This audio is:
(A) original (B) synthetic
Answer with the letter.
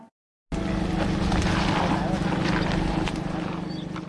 A